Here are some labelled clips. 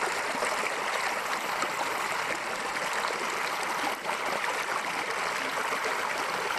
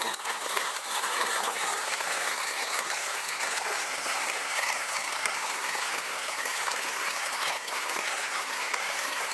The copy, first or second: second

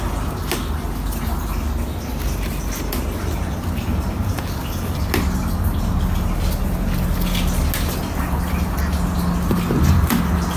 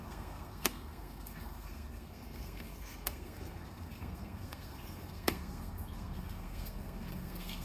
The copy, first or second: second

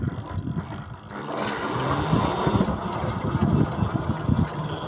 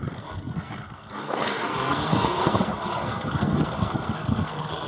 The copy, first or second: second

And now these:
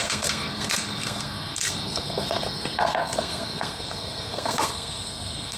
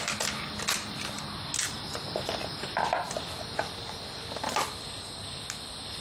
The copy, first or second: first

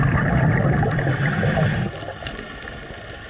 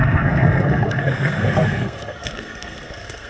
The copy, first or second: second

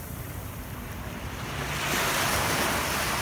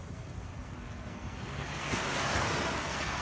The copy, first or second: second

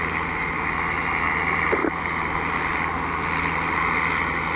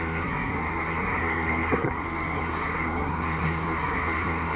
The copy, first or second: second